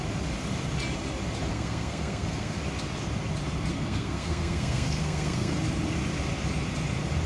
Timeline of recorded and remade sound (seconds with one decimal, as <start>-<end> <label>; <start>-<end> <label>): 0.0-1.5 recorded; 1.5-2.6 remade; 2.6-3.7 recorded; 3.7-5.5 remade; 5.5-7.3 recorded